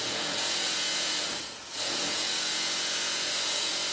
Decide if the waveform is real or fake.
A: fake